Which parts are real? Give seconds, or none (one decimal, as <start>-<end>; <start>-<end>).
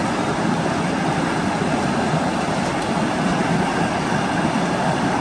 0.0-5.2